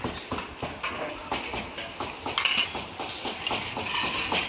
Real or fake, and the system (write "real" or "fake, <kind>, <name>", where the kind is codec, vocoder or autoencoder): real